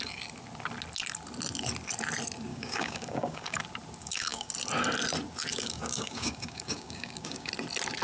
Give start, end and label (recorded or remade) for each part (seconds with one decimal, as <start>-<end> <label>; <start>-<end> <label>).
0.0-2.5 recorded; 2.5-3.6 remade; 3.6-4.0 recorded; 4.0-4.5 remade; 4.5-5.5 recorded; 5.5-7.5 remade; 7.5-8.0 recorded